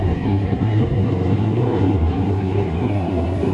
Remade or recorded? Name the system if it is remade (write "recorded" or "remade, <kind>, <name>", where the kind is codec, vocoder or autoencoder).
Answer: remade, codec, SNAC